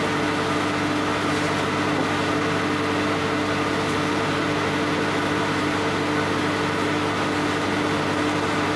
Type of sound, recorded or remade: recorded